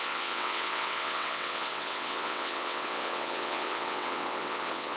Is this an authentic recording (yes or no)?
no